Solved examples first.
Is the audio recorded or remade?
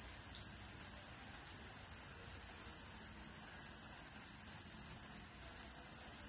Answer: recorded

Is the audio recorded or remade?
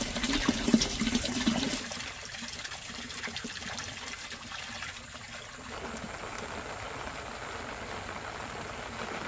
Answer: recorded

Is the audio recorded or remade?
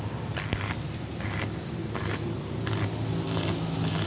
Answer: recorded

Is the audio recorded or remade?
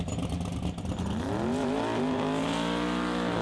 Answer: recorded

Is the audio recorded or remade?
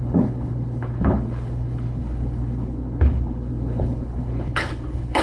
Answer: remade